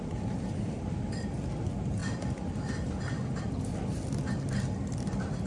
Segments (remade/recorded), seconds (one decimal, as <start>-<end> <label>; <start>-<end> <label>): 0.0-5.5 remade